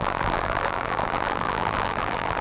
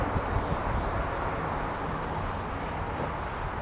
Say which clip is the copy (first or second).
first